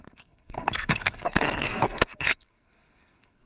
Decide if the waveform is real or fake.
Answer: fake